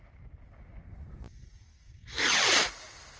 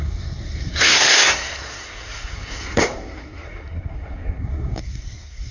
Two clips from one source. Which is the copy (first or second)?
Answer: second